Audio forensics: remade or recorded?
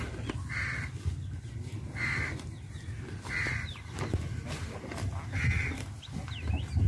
recorded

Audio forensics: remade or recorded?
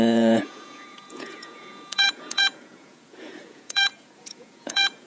remade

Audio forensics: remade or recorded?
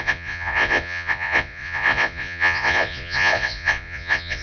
remade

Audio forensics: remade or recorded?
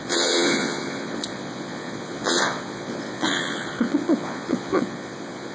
remade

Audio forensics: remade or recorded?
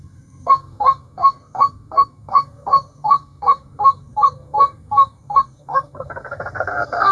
remade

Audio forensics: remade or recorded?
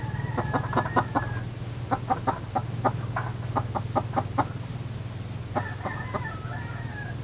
recorded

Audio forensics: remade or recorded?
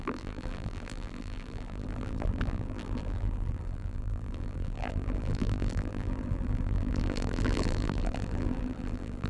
remade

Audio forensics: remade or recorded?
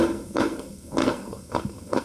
remade